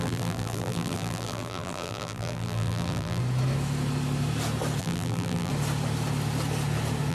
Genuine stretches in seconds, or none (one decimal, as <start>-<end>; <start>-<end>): 3.2-4.8; 5.5-7.1